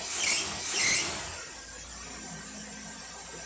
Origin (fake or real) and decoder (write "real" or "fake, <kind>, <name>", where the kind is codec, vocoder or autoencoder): real